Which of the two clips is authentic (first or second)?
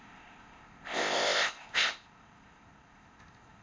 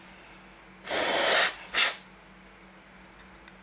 second